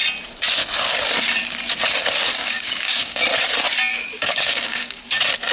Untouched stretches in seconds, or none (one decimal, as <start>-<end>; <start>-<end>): 0.0-2.4; 3.2-3.9; 5.0-5.5